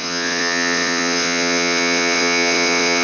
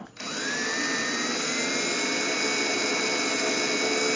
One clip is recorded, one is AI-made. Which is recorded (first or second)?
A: second